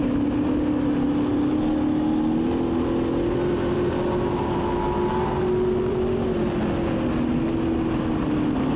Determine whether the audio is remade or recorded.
recorded